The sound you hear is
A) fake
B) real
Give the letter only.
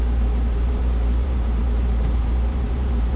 A